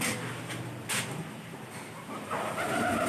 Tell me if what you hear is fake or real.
real